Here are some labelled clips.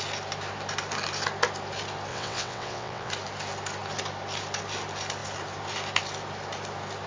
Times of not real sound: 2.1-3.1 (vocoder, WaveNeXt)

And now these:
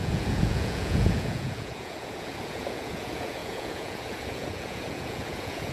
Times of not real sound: 0.0-5.7 (vocoder, Vocos)

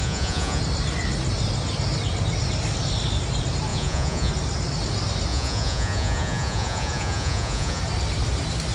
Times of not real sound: 0.0-0.6 (vocoder, Vocos); 3.7-4.3; 5.3-7.8

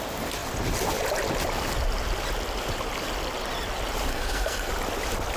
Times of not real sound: 4.1-4.7 (codec, SNAC)

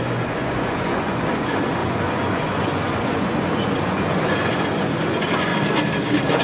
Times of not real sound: 0.0-5.5 (vocoder, Vocos)